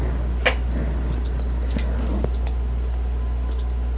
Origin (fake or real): real